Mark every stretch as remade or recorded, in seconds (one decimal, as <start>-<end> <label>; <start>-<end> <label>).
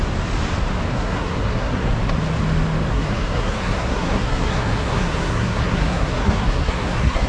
0.0-0.9 recorded; 0.9-1.9 remade; 1.9-2.9 recorded; 2.9-7.3 remade